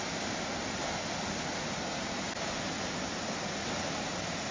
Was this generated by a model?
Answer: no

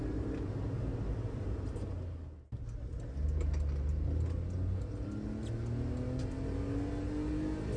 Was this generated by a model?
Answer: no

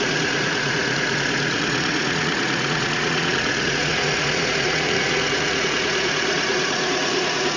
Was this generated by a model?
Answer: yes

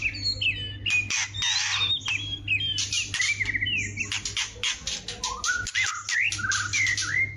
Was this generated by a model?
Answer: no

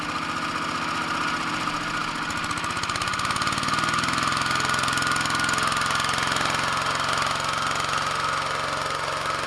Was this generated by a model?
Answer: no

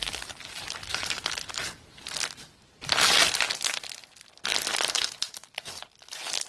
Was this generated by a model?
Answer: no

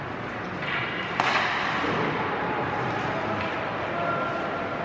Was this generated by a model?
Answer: no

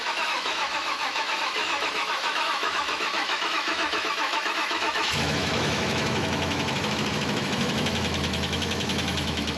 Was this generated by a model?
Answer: yes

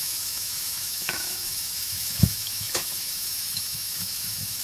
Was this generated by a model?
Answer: yes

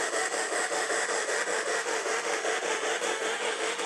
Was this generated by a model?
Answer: yes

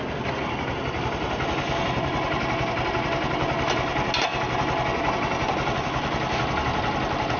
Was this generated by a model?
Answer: no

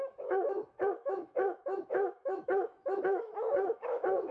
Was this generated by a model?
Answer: yes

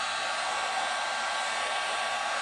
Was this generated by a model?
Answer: no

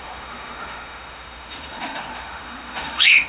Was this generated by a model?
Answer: yes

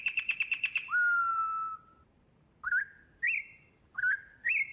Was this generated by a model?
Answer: no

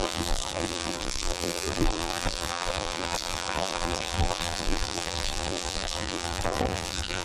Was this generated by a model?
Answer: yes